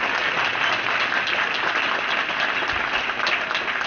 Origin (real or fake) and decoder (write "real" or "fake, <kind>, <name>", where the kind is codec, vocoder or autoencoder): real